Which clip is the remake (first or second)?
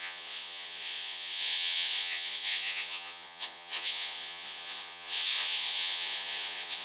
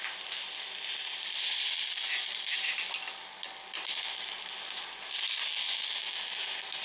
first